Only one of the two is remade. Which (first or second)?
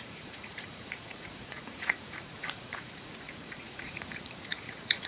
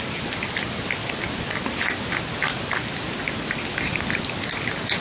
first